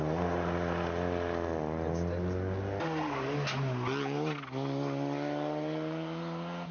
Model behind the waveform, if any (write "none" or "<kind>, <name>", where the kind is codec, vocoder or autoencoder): none